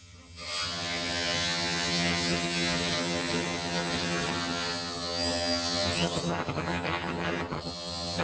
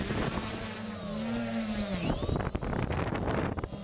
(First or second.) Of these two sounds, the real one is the second